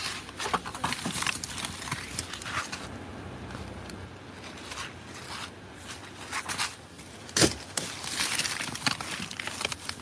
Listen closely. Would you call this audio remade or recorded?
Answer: recorded